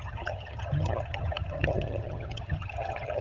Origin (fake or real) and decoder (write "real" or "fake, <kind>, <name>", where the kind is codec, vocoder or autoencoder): fake, vocoder, HiFi-GAN